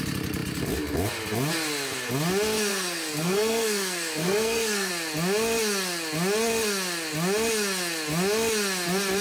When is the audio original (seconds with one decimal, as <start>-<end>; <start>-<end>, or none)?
0.0-2.7; 4.9-9.2